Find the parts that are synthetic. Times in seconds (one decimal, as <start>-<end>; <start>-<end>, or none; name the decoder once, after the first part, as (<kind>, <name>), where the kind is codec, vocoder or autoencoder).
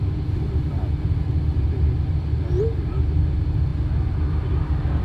none